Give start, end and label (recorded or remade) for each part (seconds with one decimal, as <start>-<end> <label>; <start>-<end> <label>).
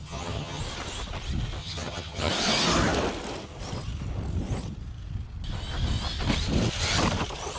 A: 0.0-0.6 remade; 0.6-1.6 recorded; 1.6-2.3 remade; 2.3-7.6 recorded